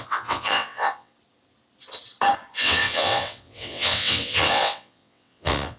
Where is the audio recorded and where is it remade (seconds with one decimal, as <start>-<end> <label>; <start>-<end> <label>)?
0.0-1.1 remade; 1.1-2.5 recorded; 2.5-5.8 remade